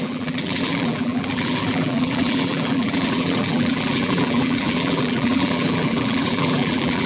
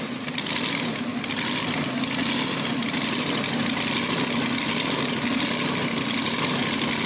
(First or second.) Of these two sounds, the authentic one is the second